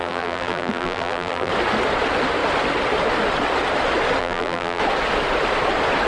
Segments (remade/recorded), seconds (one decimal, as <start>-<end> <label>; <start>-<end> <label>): 0.0-1.5 remade; 1.5-4.2 recorded; 4.2-4.8 remade; 4.8-6.1 recorded